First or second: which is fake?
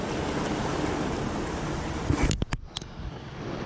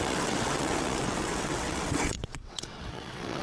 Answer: second